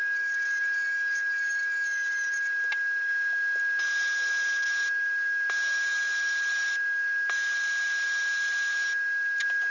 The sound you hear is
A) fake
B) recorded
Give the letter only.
B